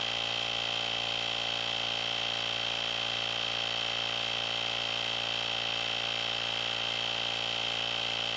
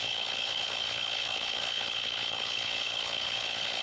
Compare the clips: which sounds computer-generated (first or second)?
second